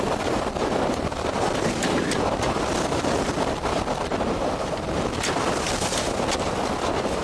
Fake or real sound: real